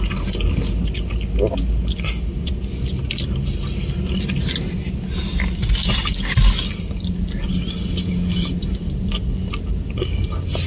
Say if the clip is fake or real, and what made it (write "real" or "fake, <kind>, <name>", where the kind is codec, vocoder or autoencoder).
real